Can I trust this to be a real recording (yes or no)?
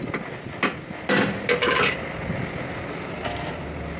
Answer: yes